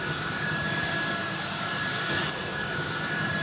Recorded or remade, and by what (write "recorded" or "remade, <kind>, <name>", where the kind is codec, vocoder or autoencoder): remade, codec, DAC